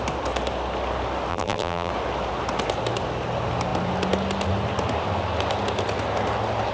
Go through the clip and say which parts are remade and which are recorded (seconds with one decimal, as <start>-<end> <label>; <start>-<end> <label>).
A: 0.0-1.3 recorded; 1.3-1.9 remade; 1.9-6.7 recorded